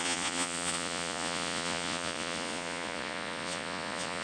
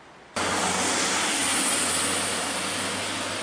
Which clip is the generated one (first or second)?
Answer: first